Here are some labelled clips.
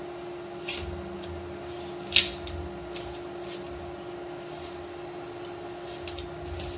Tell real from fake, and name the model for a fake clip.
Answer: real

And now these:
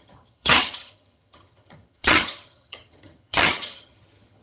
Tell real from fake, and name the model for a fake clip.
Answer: fake, vocoder, HiFi-GAN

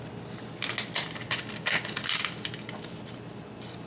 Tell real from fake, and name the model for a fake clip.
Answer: real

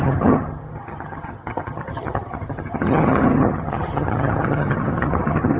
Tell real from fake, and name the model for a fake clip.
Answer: fake, vocoder, HiFi-GAN